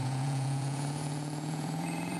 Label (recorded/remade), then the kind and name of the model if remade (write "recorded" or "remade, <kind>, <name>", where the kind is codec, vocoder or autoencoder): remade, vocoder, Vocos